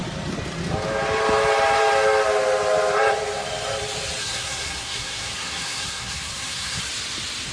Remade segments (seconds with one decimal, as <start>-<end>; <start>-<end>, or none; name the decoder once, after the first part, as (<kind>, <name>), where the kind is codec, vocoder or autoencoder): 4.2-6.8 (codec, SNAC)